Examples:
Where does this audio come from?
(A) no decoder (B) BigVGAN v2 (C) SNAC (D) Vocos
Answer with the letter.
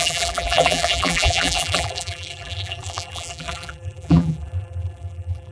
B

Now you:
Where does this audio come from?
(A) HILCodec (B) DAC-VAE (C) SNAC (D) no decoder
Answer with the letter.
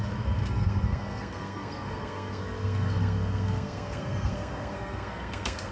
C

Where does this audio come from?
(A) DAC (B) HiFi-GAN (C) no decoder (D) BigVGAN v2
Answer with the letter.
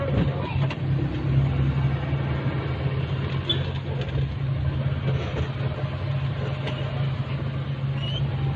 C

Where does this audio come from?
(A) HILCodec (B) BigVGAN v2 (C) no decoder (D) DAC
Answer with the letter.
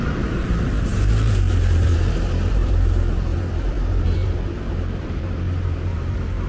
B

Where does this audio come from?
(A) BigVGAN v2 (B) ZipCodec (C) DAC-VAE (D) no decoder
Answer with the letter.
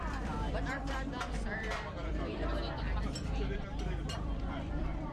A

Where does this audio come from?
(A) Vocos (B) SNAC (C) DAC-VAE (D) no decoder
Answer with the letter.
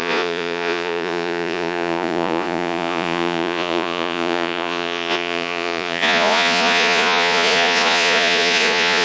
A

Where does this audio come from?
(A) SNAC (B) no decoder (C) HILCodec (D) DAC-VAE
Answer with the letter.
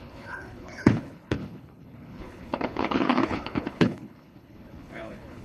C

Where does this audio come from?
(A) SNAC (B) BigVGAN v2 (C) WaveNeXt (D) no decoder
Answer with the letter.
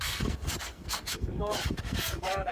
A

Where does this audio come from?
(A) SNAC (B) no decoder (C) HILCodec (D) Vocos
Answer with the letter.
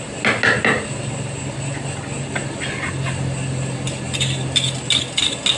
B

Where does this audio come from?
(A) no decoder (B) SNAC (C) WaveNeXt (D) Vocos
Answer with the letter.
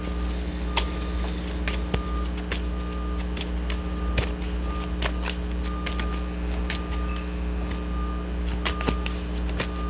A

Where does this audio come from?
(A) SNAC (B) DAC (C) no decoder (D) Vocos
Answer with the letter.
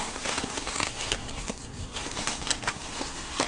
A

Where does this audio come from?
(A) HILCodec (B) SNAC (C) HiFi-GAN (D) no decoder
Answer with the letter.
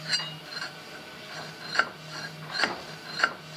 D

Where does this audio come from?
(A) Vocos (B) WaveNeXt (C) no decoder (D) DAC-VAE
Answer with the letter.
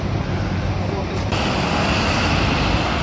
C